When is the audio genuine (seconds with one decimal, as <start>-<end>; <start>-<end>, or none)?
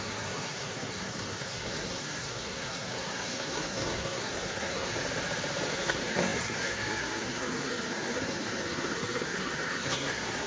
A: 5.0-5.7